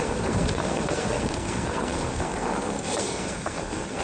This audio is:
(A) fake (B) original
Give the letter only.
A